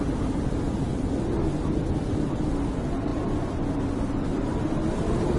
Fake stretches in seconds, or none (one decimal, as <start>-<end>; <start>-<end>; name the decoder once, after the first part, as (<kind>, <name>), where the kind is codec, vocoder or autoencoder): none